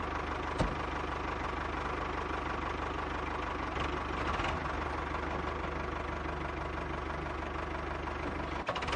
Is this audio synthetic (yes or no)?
no